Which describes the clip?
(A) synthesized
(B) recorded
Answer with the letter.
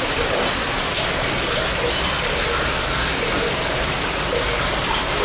B